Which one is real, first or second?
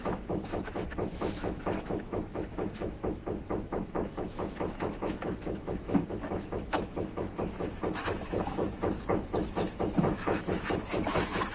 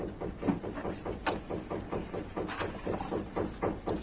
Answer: second